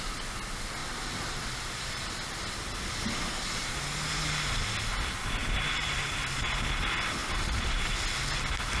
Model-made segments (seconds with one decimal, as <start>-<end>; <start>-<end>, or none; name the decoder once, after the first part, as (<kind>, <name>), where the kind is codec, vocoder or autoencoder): 0.8-2.1 (vocoder, BigVGAN v2); 5.4-6.1; 7.2-7.9